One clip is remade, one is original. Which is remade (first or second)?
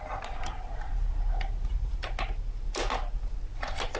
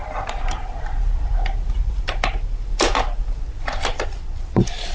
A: second